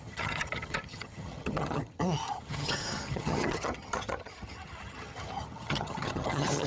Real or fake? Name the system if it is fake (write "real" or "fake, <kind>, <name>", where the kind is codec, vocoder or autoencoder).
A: fake, vocoder, HiFi-GAN